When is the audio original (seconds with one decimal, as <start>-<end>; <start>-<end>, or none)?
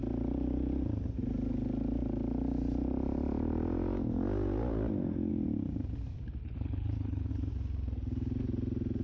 0.0-6.4; 7.3-9.0